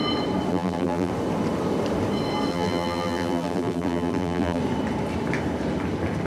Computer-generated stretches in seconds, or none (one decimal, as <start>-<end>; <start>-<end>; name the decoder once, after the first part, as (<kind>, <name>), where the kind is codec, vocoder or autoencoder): 0.5-1.1 (vocoder, BigVGAN v2); 2.5-4.6

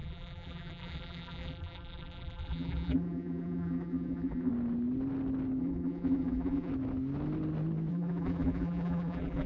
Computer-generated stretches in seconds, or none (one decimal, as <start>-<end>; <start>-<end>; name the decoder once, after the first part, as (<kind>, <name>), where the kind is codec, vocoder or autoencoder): 0.0-4.5 (vocoder, BigVGAN v2); 5.6-6.7; 7.9-9.5

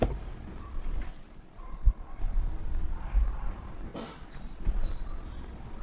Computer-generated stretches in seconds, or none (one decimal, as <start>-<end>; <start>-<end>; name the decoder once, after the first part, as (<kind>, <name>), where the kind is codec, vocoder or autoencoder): 1.1-2.2 (vocoder, BigVGAN v2); 3.9-4.7